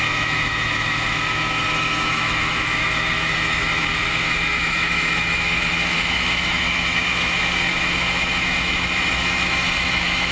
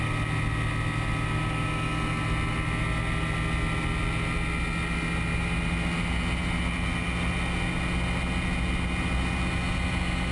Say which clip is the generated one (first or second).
first